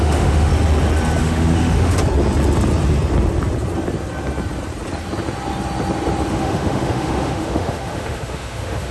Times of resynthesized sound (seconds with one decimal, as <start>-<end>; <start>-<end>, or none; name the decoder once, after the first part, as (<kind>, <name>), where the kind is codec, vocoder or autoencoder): 0.0-0.5 (autoencoder, DAC-VAE); 1.2-1.9; 6.3-8.9